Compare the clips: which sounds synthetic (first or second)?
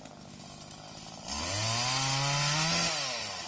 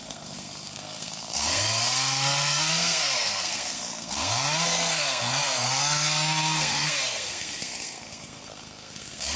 second